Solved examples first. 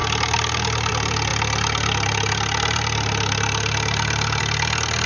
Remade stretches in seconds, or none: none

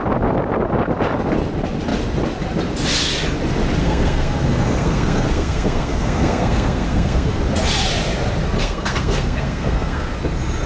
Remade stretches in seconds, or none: 3.8-7.4; 8.6-10.1

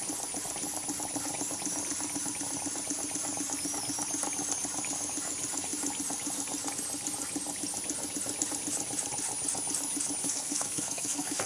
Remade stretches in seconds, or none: 10.2-11.5